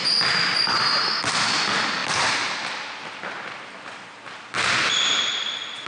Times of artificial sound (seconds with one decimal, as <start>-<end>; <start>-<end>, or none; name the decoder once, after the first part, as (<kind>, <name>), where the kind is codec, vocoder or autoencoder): 0.0-5.9 (vocoder, BigVGAN v2)